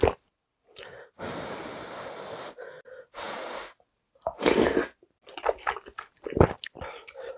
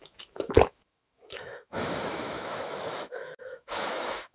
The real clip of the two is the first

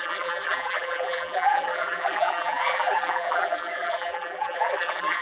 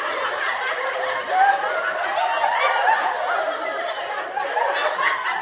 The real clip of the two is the second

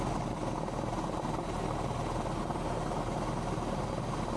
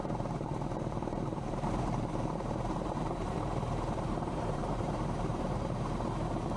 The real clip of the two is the first